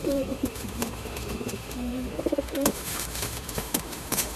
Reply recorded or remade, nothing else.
remade